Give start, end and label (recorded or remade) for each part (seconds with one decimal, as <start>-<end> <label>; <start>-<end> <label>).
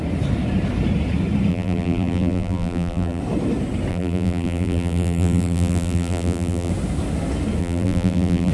0.0-1.5 recorded; 1.5-3.2 remade; 3.2-3.9 recorded; 3.9-6.7 remade; 6.7-7.6 recorded; 7.6-8.5 remade